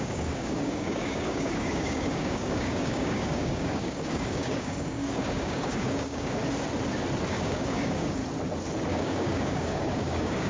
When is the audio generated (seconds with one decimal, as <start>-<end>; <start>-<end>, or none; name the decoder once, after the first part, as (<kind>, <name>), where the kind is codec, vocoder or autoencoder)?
0.0-6.4 (codec, DAC); 7.3-8.2; 8.9-10.5